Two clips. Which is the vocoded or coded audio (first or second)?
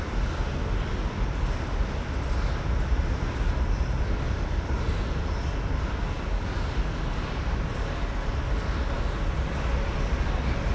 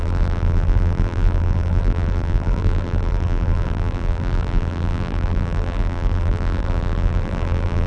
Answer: second